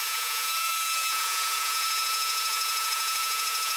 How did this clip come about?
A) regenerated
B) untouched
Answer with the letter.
A